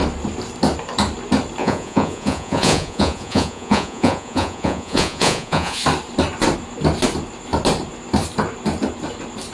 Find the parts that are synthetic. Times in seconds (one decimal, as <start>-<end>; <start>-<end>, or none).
1.6-5.8